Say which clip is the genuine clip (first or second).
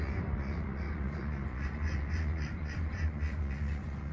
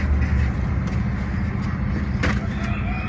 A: second